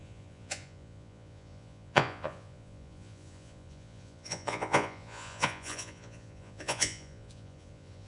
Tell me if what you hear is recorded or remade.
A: remade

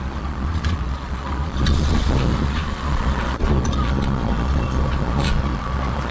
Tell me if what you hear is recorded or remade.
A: remade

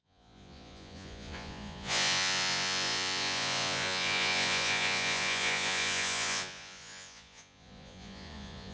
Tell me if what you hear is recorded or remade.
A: remade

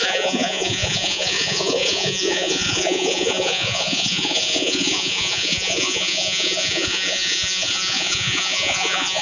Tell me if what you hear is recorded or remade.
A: remade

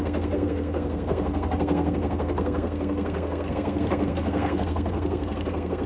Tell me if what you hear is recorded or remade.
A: remade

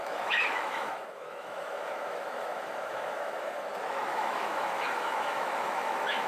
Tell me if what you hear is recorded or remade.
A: remade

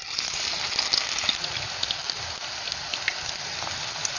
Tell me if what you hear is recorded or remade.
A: recorded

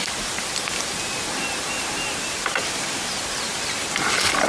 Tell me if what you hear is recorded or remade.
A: recorded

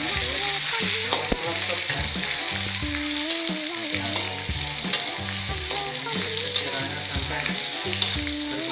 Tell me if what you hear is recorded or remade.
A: recorded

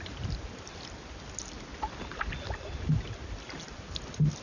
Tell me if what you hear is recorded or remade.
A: recorded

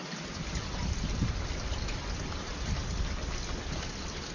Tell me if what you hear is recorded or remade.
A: recorded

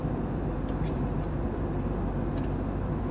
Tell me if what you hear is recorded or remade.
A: recorded